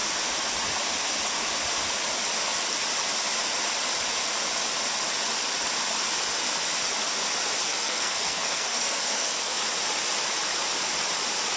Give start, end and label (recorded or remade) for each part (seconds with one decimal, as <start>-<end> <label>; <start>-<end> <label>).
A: 0.0-7.7 recorded; 7.7-9.6 remade; 9.6-11.6 recorded